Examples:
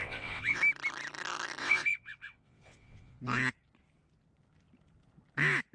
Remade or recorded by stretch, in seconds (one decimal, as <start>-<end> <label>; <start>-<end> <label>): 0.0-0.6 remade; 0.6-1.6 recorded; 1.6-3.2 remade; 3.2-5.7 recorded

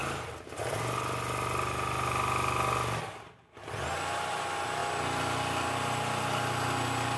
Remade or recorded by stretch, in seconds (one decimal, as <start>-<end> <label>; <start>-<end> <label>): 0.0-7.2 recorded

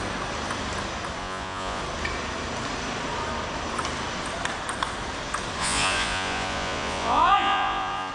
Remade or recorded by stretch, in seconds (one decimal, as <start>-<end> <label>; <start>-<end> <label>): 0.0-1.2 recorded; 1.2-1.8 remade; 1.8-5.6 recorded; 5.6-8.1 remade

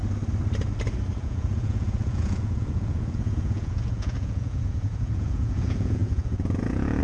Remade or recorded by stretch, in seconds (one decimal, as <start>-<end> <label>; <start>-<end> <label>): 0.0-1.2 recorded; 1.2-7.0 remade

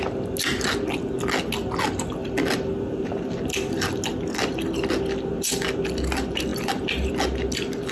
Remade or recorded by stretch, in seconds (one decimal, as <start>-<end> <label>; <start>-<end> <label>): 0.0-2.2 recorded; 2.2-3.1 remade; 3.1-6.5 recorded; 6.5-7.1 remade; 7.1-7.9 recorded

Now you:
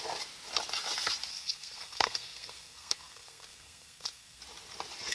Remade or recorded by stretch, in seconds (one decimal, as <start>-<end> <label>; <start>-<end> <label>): 0.0-1.3 recorded; 1.3-4.4 remade; 4.4-5.1 recorded

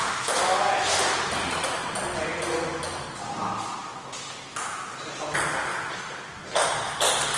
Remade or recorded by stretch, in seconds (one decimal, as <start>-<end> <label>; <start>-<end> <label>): 0.0-7.4 recorded